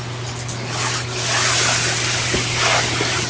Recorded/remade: recorded